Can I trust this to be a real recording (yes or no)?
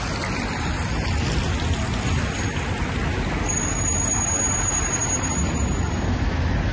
yes